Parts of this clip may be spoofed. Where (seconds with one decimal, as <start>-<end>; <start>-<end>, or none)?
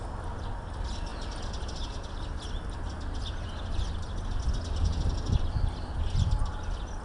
none